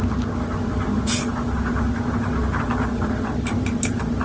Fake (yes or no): no